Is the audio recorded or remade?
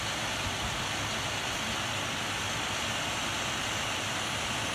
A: recorded